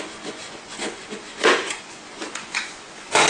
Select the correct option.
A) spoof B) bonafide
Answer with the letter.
A